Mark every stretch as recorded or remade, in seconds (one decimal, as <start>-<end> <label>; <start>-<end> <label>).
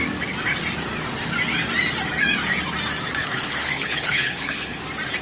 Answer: 0.0-3.2 recorded; 3.2-4.8 remade; 4.8-5.2 recorded